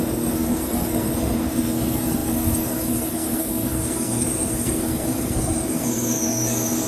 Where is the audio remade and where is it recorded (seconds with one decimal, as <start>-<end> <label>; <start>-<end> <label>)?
0.0-6.9 remade